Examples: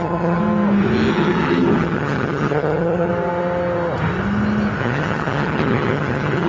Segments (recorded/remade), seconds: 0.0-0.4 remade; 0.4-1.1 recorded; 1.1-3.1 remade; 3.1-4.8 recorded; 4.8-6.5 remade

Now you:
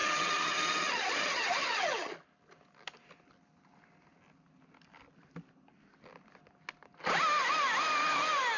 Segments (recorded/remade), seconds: 0.0-2.1 remade; 2.1-8.6 recorded

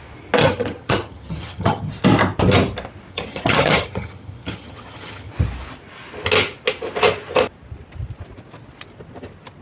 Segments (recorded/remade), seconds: 0.0-0.4 recorded; 0.4-1.9 remade; 1.9-3.1 recorded; 3.1-5.3 remade; 5.3-9.6 recorded

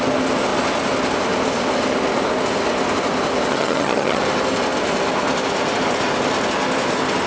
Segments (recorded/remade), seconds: 0.0-3.5 recorded; 3.5-4.2 remade; 4.2-7.3 recorded

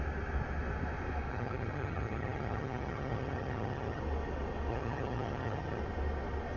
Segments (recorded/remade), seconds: 0.0-1.3 recorded; 1.3-4.0 remade; 4.0-4.7 recorded; 4.7-5.8 remade; 5.8-6.6 recorded

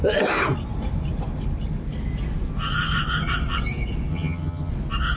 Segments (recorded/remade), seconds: 0.0-4.1 recorded; 4.1-4.7 remade; 4.7-5.2 recorded

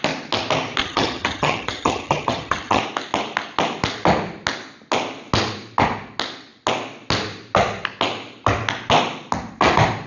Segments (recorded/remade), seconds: 0.0-0.8 recorded; 0.8-2.8 remade; 2.8-10.1 recorded